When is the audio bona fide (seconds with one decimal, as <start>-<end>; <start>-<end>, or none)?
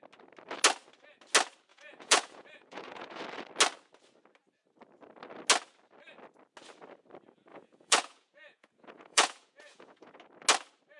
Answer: 0.0-1.7; 3.2-7.5; 10.2-11.0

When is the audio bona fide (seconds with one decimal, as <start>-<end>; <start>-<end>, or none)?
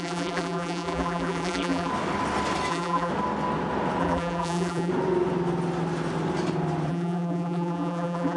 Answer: 1.9-2.7; 3.1-4.0; 4.9-6.9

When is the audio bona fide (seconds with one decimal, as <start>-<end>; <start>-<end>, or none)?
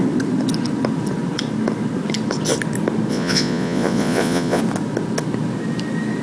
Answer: 0.0-3.1; 4.6-6.2